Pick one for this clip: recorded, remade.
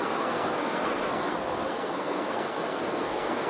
remade